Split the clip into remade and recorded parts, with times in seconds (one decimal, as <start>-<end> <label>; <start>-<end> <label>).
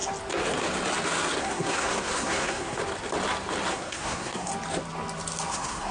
0.0-1.4 recorded; 1.4-2.8 remade; 2.8-3.7 recorded; 3.7-4.5 remade; 4.5-5.5 recorded; 5.5-5.9 remade